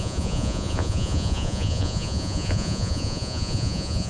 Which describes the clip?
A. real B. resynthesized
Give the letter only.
B